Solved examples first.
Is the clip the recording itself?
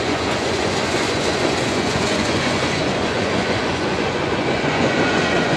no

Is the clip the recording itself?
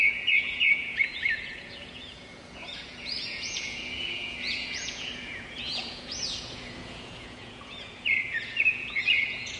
no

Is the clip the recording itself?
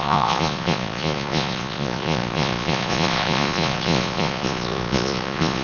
no